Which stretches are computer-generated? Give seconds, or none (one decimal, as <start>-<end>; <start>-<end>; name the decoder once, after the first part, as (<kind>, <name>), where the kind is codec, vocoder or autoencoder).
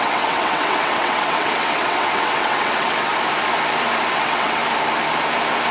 0.0-3.1 (vocoder, WaveNeXt); 4.1-4.6